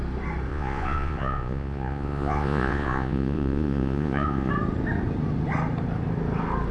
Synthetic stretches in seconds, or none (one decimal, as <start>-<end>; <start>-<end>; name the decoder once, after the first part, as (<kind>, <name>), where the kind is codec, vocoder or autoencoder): 0.5-4.5 (vocoder, Vocos)